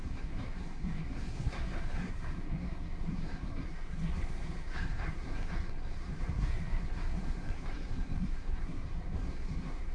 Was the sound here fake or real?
fake